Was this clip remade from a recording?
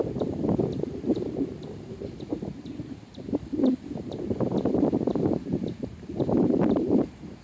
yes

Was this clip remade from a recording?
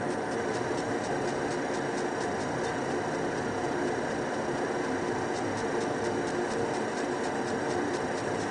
no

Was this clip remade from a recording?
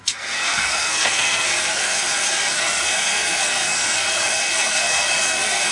yes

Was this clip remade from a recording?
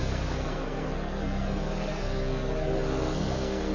yes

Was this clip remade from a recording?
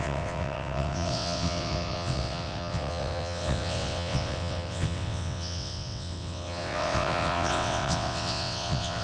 yes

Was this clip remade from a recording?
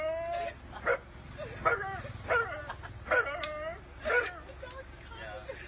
no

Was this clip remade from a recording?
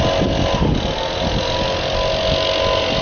no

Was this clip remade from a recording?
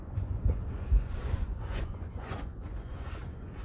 yes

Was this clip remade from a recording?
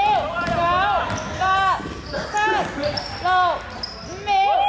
no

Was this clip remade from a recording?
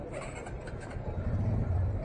yes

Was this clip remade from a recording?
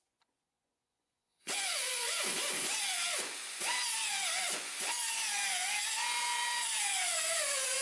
yes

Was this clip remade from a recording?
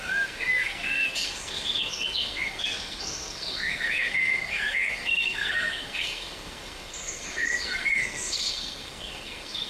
yes